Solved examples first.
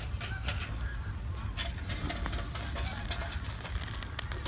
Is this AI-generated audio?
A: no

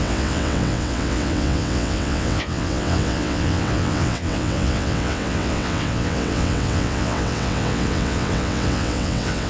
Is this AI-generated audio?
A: yes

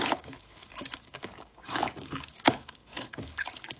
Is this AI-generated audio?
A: yes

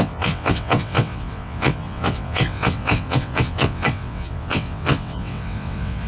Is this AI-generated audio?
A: yes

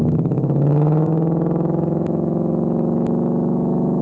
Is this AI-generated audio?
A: yes